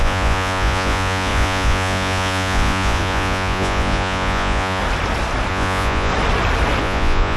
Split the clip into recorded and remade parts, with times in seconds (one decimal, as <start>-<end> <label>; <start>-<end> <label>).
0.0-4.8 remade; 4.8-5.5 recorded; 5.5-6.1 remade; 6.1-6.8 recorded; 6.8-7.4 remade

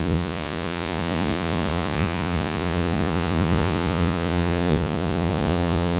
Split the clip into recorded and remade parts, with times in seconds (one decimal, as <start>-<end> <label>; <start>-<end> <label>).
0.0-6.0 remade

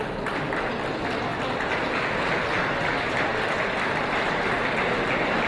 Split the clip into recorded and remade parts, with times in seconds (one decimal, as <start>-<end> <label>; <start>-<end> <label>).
0.0-5.5 recorded

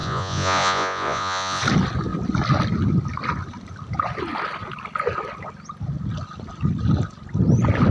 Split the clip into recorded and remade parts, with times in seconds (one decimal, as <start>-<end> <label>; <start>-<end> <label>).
0.0-1.6 remade; 1.6-7.9 recorded

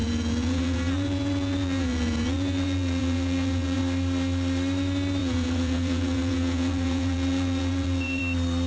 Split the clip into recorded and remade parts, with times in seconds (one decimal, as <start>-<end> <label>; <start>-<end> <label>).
0.0-3.8 remade; 3.8-5.2 recorded; 5.2-8.2 remade; 8.2-8.7 recorded